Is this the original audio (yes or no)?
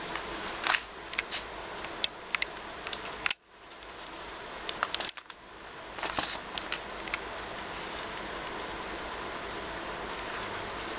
yes